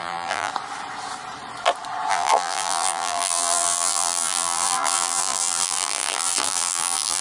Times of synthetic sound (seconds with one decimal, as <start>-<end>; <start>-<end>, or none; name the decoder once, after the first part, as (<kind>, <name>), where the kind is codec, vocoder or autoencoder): 0.0-0.5 (vocoder, BigVGAN v2); 2.1-7.2